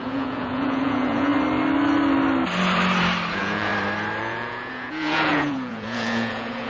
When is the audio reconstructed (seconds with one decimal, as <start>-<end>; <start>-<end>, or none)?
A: 0.0-1.3; 3.3-3.7; 4.2-6.7